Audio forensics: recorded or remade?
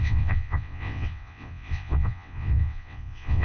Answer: remade